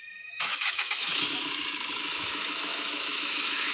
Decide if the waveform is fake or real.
fake